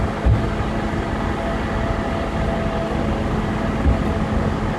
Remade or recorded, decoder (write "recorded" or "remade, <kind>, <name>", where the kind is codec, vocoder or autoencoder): recorded